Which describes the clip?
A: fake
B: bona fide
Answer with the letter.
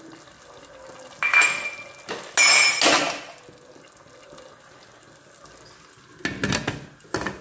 B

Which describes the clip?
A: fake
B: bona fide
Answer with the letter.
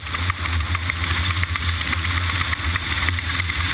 A